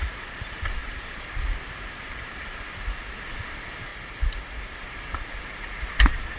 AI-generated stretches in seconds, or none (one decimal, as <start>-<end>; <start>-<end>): 0.0-3.9; 4.8-6.4